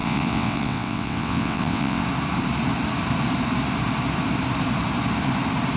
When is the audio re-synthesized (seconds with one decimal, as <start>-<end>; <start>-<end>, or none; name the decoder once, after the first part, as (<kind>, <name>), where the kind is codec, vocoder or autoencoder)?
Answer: 0.0-2.0 (vocoder, WaveNeXt)